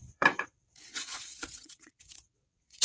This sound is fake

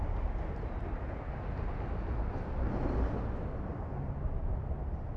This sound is real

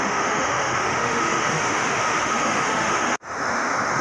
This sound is fake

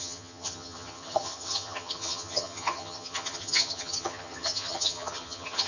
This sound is fake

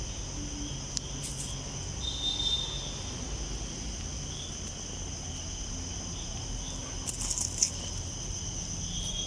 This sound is real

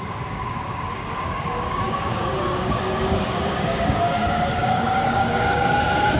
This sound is fake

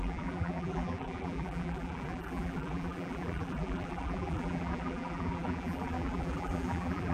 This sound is fake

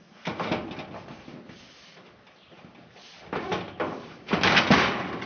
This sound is real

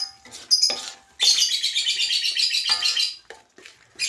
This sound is real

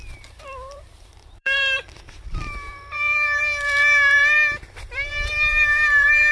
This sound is fake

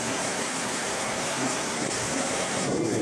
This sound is fake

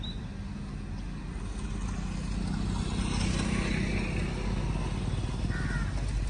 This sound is real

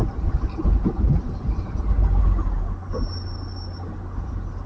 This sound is real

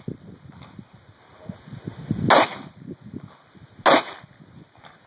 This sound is real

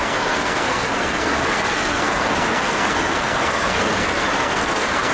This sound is fake